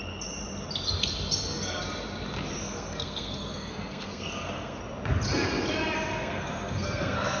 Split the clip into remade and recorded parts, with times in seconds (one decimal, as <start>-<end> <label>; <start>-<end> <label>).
0.0-2.6 recorded; 2.6-4.8 remade; 4.8-6.1 recorded; 6.1-7.4 remade